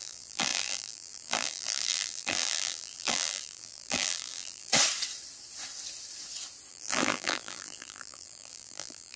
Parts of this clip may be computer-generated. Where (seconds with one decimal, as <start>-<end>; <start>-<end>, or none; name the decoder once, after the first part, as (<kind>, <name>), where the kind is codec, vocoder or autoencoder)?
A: 0.0-4.7 (vocoder, BigVGAN v2); 6.7-9.2